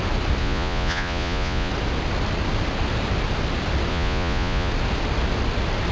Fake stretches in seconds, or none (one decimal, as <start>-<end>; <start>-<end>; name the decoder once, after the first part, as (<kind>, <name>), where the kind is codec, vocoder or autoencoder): 0.4-1.7 (vocoder, Vocos); 3.9-4.7